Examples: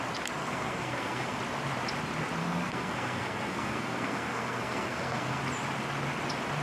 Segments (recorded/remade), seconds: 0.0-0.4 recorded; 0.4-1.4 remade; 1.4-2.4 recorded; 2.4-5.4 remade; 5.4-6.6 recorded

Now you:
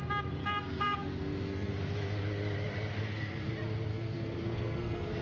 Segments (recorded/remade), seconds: 0.0-0.4 recorded; 0.4-1.7 remade; 1.7-3.0 recorded; 3.0-3.5 remade; 3.5-3.9 recorded; 3.9-5.2 remade